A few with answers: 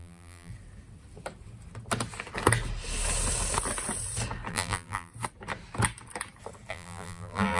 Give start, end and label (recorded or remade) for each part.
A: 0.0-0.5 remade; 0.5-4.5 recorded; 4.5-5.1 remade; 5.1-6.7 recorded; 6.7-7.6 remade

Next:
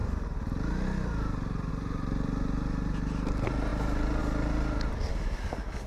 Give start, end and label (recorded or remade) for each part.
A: 0.0-5.1 recorded; 5.1-5.9 remade

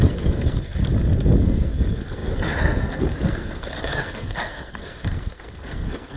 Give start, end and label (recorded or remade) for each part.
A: 0.0-0.9 remade; 0.9-1.4 recorded; 1.4-6.2 remade

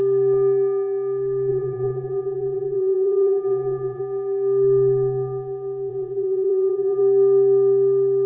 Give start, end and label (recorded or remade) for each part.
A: 0.0-1.5 recorded; 1.5-4.0 remade; 4.0-5.9 recorded; 5.9-7.0 remade; 7.0-8.3 recorded

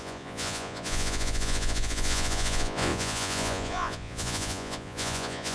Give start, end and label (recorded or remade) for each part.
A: 0.0-5.5 remade